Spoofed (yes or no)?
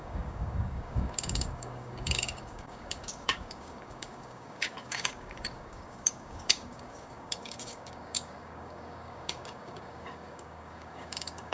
yes